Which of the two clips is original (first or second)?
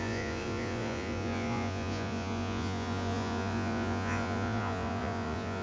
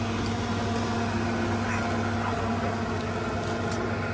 second